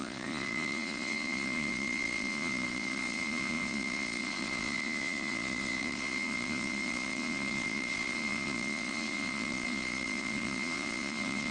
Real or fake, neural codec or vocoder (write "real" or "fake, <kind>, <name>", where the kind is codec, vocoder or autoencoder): fake, vocoder, Vocos